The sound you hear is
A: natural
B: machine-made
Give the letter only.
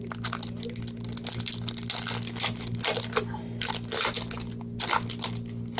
A